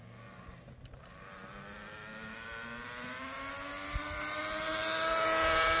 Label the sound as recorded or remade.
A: recorded